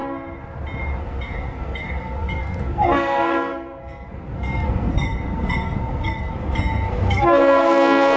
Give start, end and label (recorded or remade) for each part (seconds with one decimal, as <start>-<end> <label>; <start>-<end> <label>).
0.0-1.0 recorded; 1.0-8.2 remade